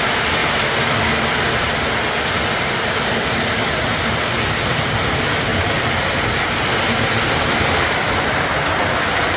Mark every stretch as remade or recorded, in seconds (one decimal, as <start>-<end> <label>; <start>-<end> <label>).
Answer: 0.0-0.4 recorded; 0.4-3.5 remade; 3.5-5.5 recorded; 5.5-6.1 remade; 6.1-9.4 recorded